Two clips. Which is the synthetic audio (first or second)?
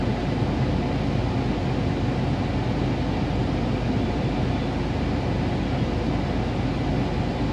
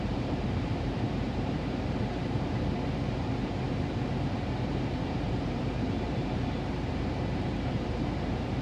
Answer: second